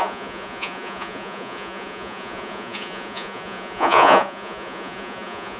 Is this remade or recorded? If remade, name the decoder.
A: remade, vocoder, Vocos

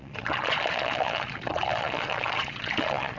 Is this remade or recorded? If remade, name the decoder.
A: remade, vocoder, Vocos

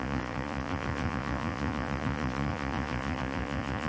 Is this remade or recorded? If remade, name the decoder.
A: remade, vocoder, Vocos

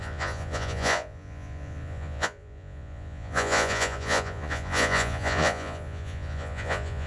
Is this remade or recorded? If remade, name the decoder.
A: remade, vocoder, Vocos